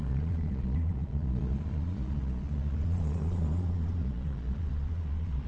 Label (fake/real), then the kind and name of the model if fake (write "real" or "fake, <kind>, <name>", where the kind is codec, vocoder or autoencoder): fake, vocoder, Vocos